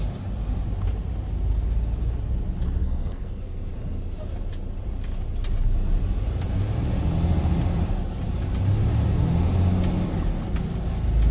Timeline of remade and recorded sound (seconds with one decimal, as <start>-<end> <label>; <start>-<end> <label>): 0.0-2.8 recorded; 2.8-3.7 remade; 3.7-11.3 recorded